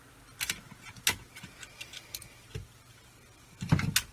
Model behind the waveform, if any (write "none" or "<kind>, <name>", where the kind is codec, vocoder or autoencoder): none